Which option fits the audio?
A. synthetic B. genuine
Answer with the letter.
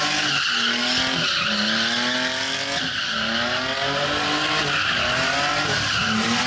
B